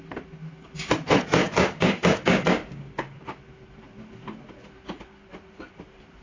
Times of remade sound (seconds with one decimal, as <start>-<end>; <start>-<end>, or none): 1.4-3.4